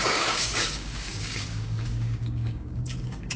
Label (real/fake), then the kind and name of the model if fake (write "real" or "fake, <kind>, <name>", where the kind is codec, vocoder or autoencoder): fake, codec, DAC